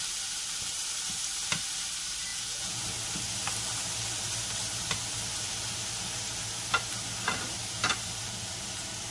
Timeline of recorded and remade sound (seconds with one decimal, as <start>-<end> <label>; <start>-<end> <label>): 0.0-2.3 recorded; 2.3-2.8 remade; 2.8-9.1 recorded